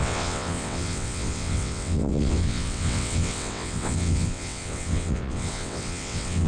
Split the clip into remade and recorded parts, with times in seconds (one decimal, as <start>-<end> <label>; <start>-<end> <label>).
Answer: 0.0-6.5 remade